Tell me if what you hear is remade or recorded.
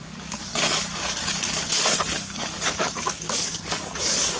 remade